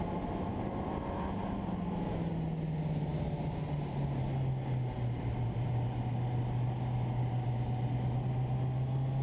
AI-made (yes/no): no